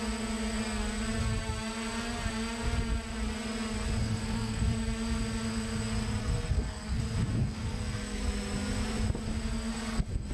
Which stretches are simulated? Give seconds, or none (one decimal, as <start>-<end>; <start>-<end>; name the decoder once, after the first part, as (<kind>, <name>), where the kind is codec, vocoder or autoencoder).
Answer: 4.0-4.6 (codec, SNAC); 6.2-7.0; 7.4-8.2; 9.7-10.3